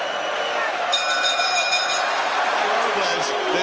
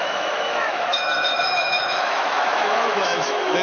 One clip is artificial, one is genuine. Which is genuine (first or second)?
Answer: first